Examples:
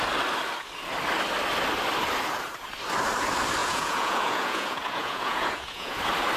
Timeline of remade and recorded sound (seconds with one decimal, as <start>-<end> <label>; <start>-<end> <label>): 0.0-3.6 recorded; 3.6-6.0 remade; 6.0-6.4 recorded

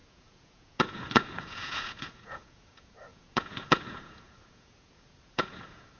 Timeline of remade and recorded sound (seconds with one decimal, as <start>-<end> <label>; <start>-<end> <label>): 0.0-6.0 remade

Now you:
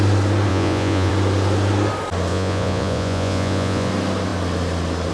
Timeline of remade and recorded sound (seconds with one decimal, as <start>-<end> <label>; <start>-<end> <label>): 0.0-0.5 recorded; 0.5-1.1 remade; 1.1-2.3 recorded; 2.3-3.9 remade; 3.9-5.1 recorded

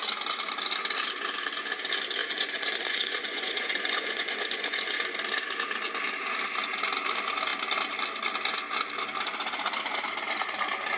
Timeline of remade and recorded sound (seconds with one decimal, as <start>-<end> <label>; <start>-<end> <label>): 0.0-2.2 recorded; 2.2-4.8 remade; 4.8-11.0 recorded

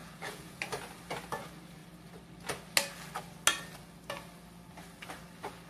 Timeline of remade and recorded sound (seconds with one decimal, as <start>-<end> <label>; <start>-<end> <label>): 0.0-0.6 remade; 0.6-5.7 recorded

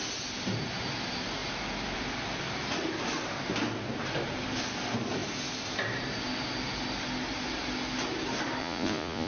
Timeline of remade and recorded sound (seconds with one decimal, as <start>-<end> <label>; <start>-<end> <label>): 0.0-8.6 recorded; 8.6-9.3 remade